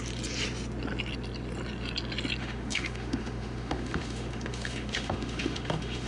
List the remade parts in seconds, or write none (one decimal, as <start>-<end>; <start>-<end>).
2.4-6.1